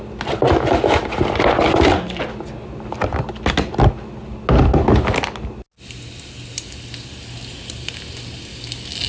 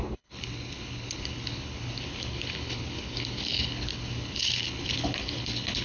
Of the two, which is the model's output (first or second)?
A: second